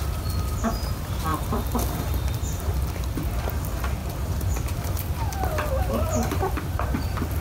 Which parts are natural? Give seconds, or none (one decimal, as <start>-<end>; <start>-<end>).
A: 0.0-1.3; 2.7-4.0